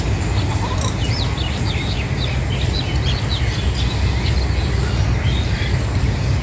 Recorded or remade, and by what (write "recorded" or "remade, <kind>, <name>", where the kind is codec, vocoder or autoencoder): recorded